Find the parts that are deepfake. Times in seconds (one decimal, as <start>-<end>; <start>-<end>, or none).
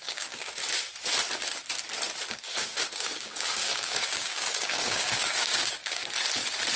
0.0-0.6; 2.3-6.0